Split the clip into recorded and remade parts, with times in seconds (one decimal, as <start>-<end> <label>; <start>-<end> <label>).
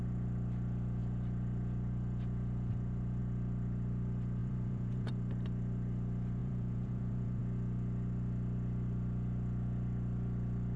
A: 0.0-4.4 recorded; 4.4-5.1 remade; 5.1-6.4 recorded; 6.4-7.4 remade; 7.4-10.8 recorded